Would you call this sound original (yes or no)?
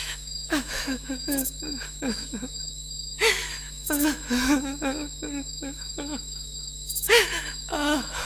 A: no